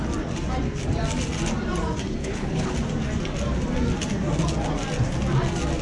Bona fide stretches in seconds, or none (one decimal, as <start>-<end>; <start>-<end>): 0.0-2.2; 2.7-5.8